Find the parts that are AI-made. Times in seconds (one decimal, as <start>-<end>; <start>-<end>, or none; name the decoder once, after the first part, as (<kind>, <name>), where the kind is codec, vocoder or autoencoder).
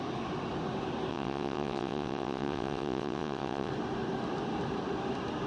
1.1-3.7 (vocoder, WaveNeXt)